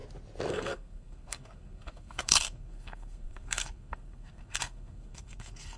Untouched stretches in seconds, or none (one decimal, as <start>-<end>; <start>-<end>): 0.0-0.5